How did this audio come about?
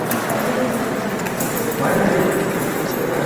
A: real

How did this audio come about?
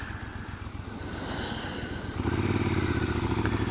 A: real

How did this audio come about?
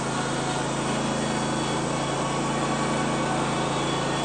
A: real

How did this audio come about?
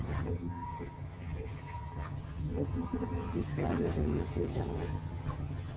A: fake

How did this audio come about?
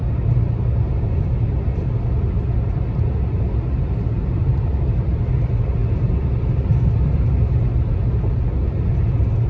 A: real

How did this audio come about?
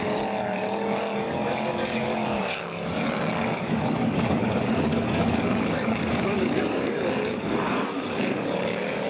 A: fake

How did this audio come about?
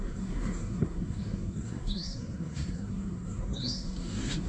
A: fake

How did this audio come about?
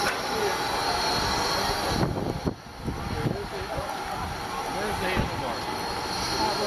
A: real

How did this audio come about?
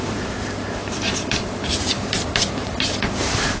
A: fake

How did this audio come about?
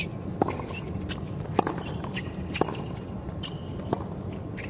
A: real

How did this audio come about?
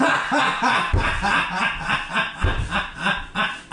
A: real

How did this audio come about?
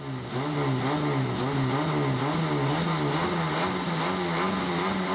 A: real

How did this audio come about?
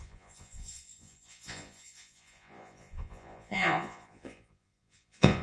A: fake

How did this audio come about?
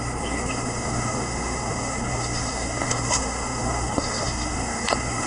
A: fake